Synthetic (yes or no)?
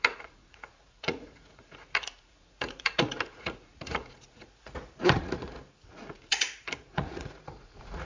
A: yes